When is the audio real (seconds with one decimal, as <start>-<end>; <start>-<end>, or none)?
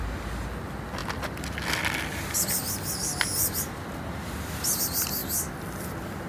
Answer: 0.0-6.3